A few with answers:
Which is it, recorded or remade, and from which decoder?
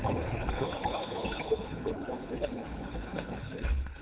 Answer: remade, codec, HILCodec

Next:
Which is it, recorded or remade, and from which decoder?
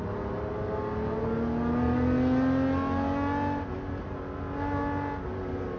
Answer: recorded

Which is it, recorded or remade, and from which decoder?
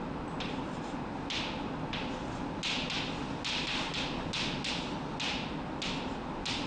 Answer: recorded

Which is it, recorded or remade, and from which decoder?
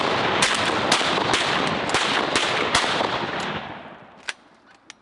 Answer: recorded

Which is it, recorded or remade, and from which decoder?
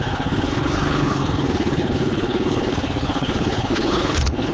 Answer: remade, codec, HILCodec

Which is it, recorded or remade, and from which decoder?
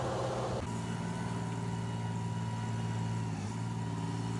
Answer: recorded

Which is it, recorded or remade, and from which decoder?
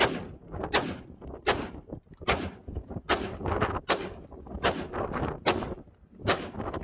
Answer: recorded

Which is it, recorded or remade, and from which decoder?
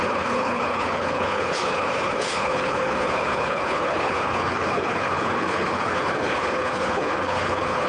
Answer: remade, codec, HILCodec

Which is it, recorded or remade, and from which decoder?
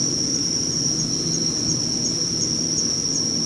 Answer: recorded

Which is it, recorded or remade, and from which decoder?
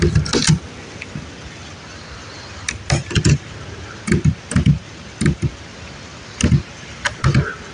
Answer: recorded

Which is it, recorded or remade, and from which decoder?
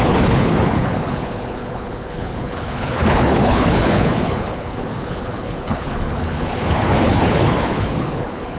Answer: remade, codec, HILCodec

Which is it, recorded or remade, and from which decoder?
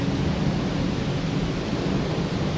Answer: recorded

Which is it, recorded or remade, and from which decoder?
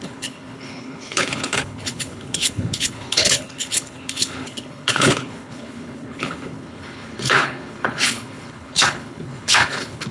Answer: remade, codec, HILCodec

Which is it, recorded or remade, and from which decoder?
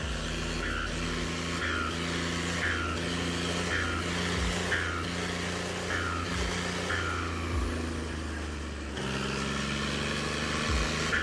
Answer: recorded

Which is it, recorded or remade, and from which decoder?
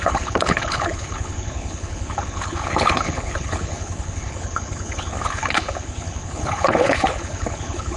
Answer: remade, codec, HILCodec